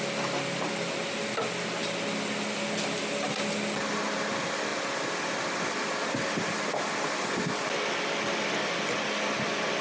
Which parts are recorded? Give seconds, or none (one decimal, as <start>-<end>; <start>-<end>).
0.0-9.8